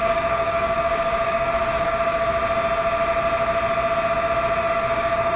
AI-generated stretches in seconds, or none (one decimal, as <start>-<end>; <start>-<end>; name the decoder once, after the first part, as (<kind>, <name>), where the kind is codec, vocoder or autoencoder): 0.0-2.4 (codec, DAC); 4.7-5.4